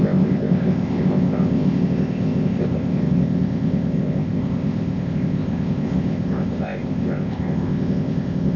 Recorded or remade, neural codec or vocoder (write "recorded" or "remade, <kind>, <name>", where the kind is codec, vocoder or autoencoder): remade, codec, ZipCodec